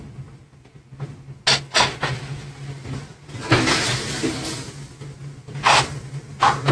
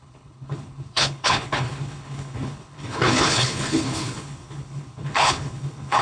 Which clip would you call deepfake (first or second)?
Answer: second